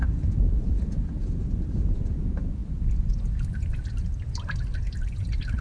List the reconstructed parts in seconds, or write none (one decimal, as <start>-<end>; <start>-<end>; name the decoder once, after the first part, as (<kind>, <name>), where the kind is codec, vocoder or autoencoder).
none